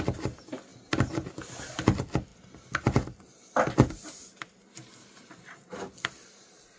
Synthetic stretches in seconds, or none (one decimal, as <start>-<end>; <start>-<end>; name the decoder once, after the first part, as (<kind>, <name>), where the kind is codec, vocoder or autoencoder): 0.7-1.3 (vocoder, BigVGAN v2)